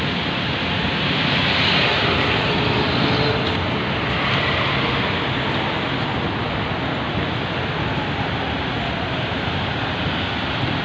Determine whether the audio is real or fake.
real